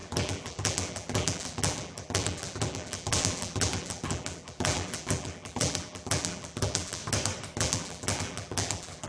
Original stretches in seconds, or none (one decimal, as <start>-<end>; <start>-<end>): 7.0-7.6